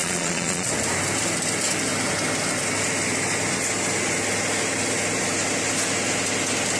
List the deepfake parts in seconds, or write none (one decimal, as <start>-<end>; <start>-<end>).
0.0-0.7